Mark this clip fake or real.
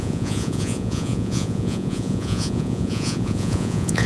fake